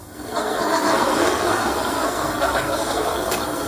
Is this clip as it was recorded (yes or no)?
no